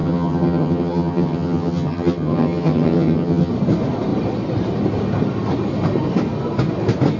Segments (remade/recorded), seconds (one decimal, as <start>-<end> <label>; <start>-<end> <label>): 0.0-3.5 remade; 3.5-7.2 recorded